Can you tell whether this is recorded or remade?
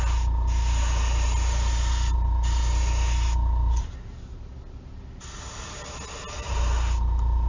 recorded